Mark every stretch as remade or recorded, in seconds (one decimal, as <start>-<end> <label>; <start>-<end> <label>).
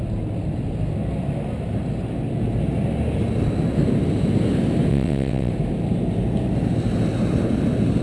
0.0-4.9 recorded; 4.9-5.5 remade; 5.5-8.0 recorded